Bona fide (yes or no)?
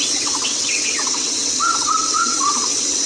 no